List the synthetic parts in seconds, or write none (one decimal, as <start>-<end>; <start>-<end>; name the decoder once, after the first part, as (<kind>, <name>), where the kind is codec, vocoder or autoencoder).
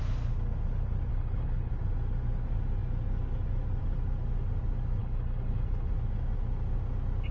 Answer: 1.1-1.7 (codec, HILCodec); 5.0-5.9